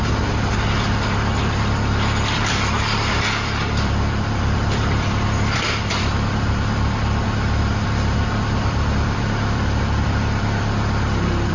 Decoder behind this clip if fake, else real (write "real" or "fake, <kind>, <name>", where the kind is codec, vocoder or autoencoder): fake, vocoder, BigVGAN v2